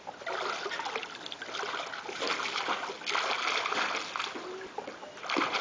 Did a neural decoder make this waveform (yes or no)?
no